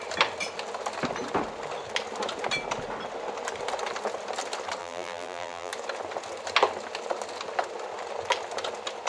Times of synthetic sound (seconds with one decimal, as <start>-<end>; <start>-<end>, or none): 4.8-5.7